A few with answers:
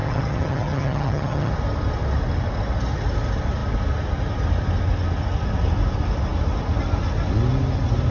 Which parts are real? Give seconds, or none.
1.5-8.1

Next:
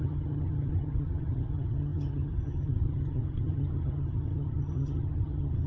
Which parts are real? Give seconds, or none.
none

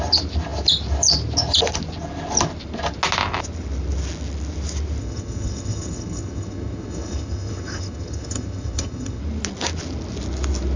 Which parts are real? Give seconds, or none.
0.0-5.0; 9.2-10.8

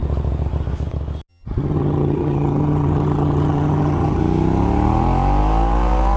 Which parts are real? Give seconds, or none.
0.0-1.3; 4.2-6.2

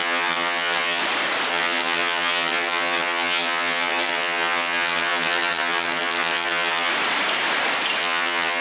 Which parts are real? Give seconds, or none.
1.0-1.5; 6.9-8.0

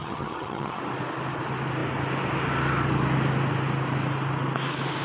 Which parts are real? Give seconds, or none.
0.8-5.0

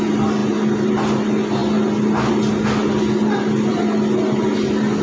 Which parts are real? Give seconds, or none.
0.0-5.0

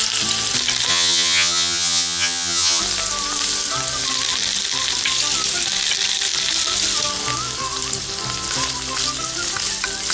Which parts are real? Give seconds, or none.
0.0-0.9; 2.8-10.1